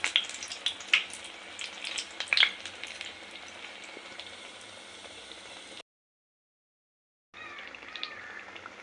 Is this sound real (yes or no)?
yes